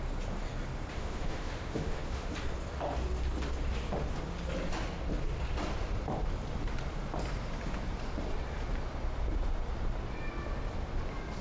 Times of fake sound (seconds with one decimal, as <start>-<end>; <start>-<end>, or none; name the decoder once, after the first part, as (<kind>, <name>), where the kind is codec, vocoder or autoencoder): 0.9-2.3 (autoencoder, DAC-VAE)